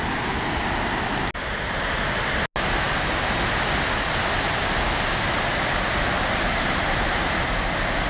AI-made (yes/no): no